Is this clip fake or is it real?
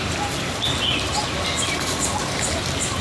real